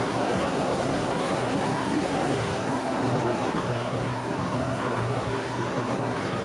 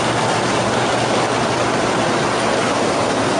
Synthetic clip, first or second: first